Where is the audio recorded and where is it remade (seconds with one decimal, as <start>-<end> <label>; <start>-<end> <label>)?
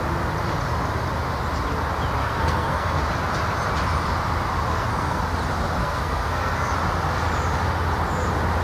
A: 0.0-2.2 recorded; 2.2-3.0 remade; 3.0-4.7 recorded; 4.7-5.2 remade; 5.2-5.8 recorded; 5.8-6.7 remade; 6.7-8.6 recorded